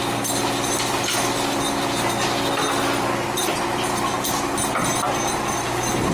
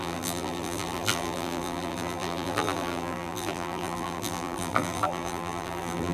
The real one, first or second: first